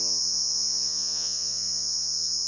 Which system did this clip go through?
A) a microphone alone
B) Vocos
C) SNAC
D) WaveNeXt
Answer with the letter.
B